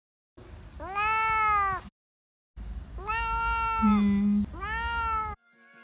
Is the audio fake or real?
real